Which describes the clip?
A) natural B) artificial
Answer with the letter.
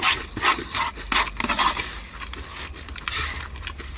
A